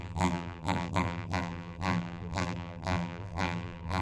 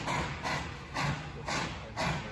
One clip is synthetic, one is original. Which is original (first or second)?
second